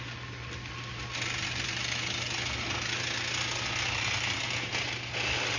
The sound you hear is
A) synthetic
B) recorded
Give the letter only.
B